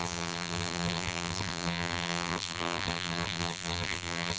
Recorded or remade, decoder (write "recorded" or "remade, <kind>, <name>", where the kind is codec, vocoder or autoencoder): remade, vocoder, BigVGAN v2